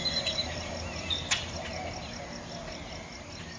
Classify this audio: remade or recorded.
recorded